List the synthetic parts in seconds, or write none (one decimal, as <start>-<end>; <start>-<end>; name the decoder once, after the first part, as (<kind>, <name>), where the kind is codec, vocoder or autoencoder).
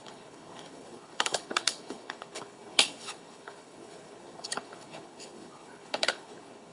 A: 0.0-6.7 (codec, HILCodec)